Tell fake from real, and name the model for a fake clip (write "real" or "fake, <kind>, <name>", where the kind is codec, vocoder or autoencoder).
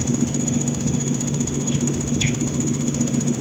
fake, autoencoder, DAC-VAE